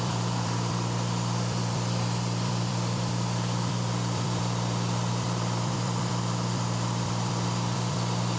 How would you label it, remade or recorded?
remade